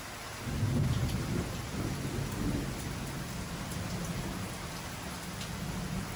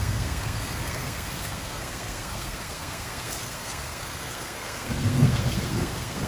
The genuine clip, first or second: first